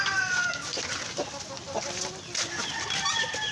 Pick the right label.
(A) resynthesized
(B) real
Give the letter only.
B